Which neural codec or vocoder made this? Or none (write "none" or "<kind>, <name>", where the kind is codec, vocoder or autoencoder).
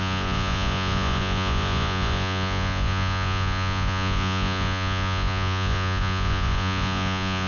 vocoder, Vocos